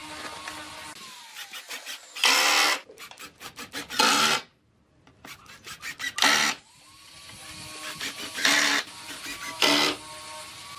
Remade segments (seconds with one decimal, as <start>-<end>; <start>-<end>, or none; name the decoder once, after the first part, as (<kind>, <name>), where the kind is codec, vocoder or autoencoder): 2.8-4.0 (vocoder, BigVGAN v2)